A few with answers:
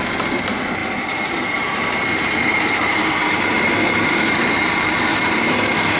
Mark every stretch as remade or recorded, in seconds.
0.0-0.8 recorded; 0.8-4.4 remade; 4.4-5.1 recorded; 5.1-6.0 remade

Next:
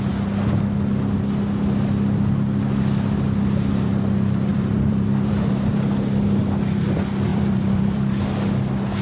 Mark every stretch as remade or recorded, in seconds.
0.0-4.5 recorded; 4.5-5.7 remade; 5.7-7.3 recorded; 7.3-8.2 remade; 8.2-9.0 recorded

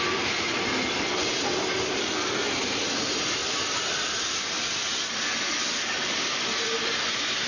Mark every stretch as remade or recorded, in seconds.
0.0-3.4 recorded; 3.4-4.5 remade; 4.5-6.0 recorded; 6.0-7.5 remade

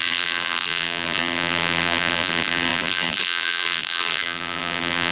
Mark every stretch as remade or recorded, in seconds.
0.0-5.1 remade

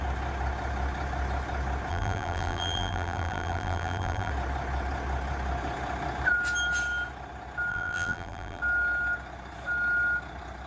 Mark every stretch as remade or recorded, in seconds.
0.0-1.9 recorded; 1.9-4.3 remade; 4.3-7.7 recorded; 7.7-8.6 remade; 8.6-10.7 recorded